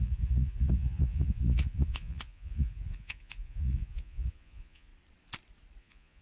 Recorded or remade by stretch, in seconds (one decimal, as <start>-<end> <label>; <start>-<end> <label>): 0.0-4.9 remade; 4.9-5.8 recorded; 5.8-6.2 remade